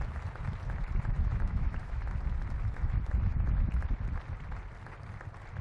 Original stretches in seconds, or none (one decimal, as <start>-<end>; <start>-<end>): 0.0-1.1; 2.0-5.6